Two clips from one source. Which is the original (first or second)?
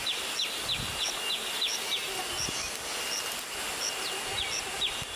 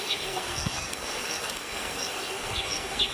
first